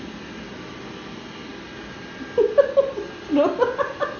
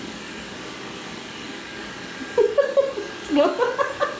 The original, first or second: first